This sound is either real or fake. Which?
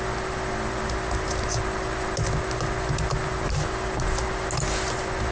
real